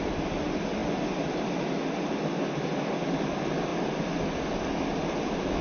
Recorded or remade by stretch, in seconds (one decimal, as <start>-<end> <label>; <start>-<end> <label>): 0.0-5.6 recorded